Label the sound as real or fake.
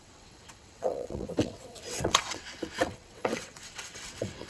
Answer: fake